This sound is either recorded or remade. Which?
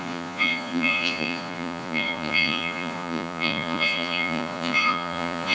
remade